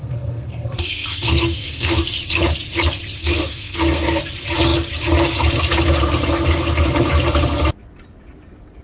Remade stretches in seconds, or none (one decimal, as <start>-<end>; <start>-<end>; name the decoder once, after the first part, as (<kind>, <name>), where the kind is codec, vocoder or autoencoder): 0.0-2.0 (codec, SNAC); 3.2-4.2